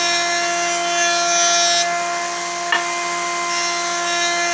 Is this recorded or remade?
recorded